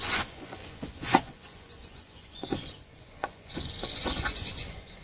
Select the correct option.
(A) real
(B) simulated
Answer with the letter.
B